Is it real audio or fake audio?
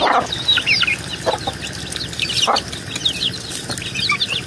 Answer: real